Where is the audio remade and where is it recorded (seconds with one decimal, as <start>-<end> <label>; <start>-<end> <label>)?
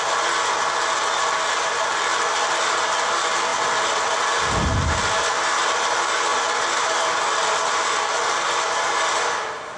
0.0-9.8 recorded